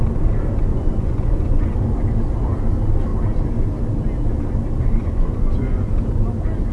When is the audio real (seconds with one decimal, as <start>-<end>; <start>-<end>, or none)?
0.0-0.7; 1.8-5.0; 5.9-6.7

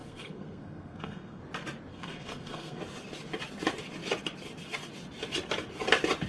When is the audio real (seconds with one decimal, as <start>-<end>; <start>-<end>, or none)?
1.4-1.9; 2.8-6.3

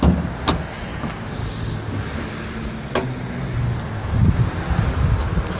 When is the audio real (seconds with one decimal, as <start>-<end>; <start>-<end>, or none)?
0.0-5.6

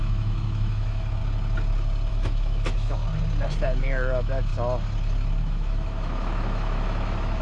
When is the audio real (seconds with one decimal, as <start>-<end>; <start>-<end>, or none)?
1.2-2.1; 3.0-3.8; 4.5-5.4